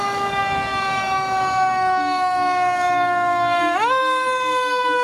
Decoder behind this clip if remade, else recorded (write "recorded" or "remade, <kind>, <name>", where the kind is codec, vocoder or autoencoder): remade, codec, DAC